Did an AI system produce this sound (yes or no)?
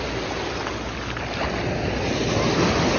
no